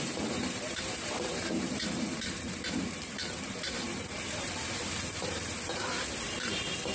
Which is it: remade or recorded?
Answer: remade